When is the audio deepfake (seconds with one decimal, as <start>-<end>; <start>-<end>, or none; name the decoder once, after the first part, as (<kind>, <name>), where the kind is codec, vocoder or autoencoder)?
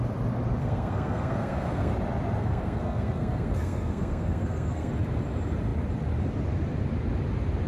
0.6-1.9 (codec, SNAC); 2.4-4.9